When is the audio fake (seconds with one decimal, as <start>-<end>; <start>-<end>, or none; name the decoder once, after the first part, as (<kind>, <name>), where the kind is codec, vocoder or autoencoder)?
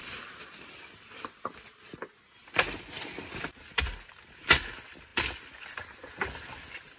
none